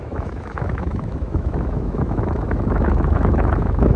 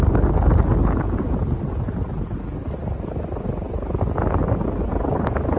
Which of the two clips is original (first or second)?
second